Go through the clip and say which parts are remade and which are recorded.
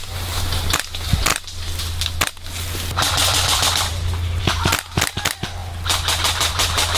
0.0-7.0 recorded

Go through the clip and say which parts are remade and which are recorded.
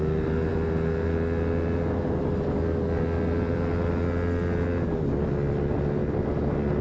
0.0-6.8 recorded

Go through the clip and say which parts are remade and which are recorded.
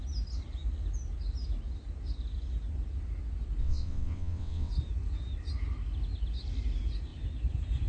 0.0-3.6 recorded; 3.6-4.7 remade; 4.7-7.9 recorded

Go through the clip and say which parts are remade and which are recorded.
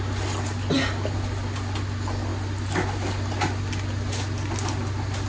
0.0-5.3 recorded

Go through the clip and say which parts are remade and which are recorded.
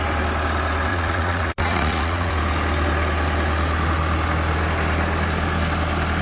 0.0-0.9 recorded; 0.9-2.3 remade; 2.3-6.2 recorded